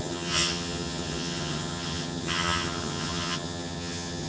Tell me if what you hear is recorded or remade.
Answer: remade